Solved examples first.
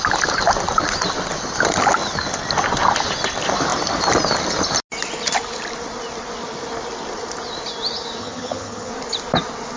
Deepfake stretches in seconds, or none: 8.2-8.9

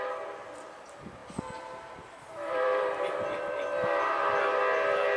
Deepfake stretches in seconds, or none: 1.2-4.3

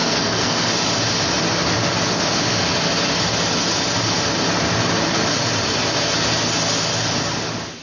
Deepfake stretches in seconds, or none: 0.0-0.7

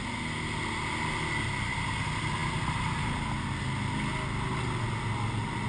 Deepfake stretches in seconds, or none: none